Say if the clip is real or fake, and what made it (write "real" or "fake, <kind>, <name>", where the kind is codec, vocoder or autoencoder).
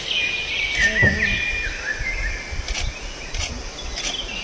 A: real